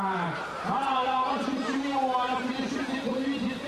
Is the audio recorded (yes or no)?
no